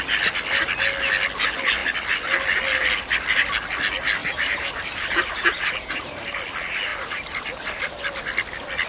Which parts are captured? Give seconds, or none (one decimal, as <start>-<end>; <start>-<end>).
0.0-4.2; 6.4-6.9; 8.2-8.9